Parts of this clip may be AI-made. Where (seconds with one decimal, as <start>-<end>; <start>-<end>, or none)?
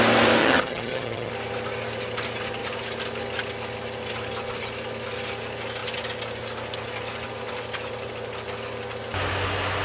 0.4-1.3